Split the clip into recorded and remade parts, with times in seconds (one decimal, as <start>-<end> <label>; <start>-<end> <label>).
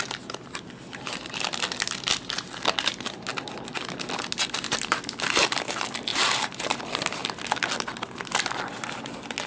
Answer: 0.0-6.1 recorded; 6.1-6.8 remade; 6.8-9.5 recorded